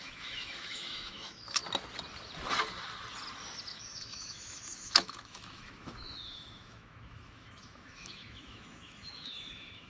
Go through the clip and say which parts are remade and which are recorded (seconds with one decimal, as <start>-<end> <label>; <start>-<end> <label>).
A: 0.0-1.6 remade; 1.6-3.7 recorded; 3.7-9.9 remade